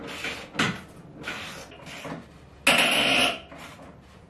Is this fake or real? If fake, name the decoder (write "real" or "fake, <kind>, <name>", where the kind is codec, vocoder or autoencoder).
real